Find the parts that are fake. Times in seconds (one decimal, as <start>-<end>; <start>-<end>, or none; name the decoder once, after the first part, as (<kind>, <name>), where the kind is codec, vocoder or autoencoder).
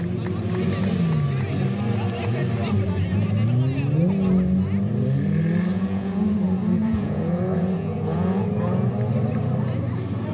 5.7-8.9 (vocoder, Vocos)